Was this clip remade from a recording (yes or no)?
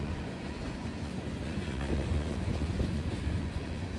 yes